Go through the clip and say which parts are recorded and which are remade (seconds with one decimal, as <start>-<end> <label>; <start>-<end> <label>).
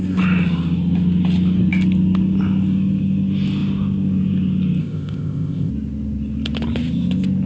0.0-4.8 recorded; 4.8-5.7 remade; 5.7-7.5 recorded